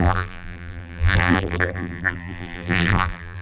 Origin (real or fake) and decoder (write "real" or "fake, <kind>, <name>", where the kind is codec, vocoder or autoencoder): fake, vocoder, BigVGAN v2